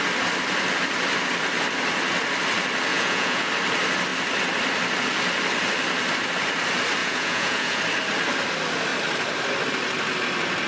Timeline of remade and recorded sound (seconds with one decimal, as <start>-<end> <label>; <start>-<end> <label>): 0.0-2.9 recorded; 2.9-3.5 remade; 3.5-7.0 recorded; 7.0-7.8 remade; 7.8-10.7 recorded